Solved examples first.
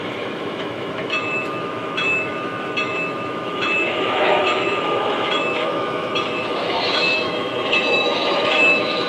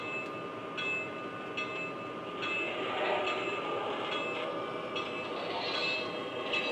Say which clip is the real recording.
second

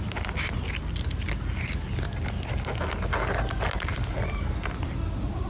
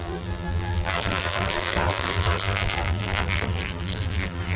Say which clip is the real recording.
first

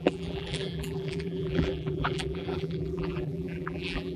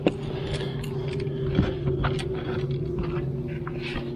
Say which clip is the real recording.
second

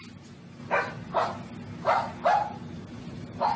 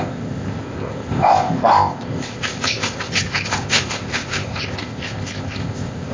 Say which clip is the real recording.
first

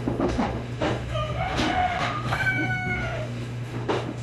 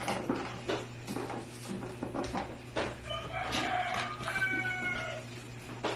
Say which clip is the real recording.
second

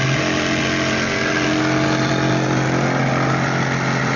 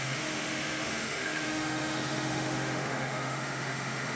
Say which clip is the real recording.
first